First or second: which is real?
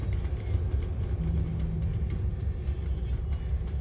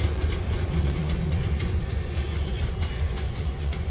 first